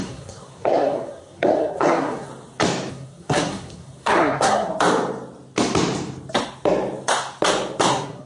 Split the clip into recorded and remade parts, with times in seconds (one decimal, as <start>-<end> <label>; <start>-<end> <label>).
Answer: 0.0-2.3 remade; 2.3-2.9 recorded; 2.9-4.7 remade; 4.7-7.9 recorded; 7.9-8.3 remade